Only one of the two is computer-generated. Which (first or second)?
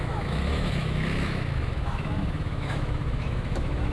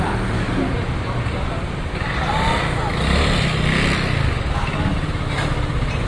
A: first